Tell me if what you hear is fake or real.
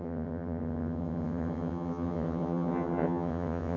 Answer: fake